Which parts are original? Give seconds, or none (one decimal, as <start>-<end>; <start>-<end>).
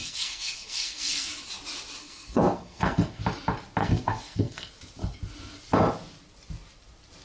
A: 1.3-2.0; 3.2-3.8; 4.7-7.2